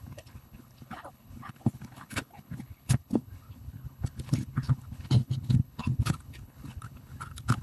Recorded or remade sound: remade